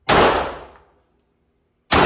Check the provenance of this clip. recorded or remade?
recorded